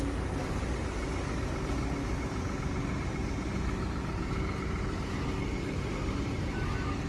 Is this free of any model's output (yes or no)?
yes